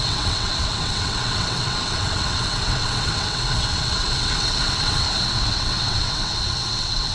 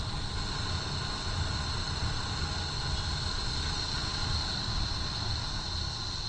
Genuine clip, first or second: second